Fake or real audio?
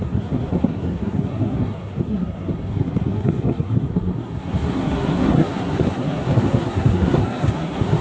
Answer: fake